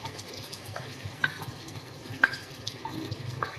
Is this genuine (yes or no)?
no